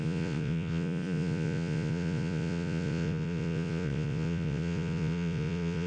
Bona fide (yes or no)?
no